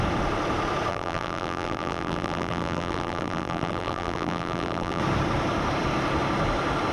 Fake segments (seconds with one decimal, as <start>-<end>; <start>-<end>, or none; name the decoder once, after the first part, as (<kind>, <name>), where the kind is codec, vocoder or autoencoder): 0.9-5.0 (vocoder, BigVGAN v2)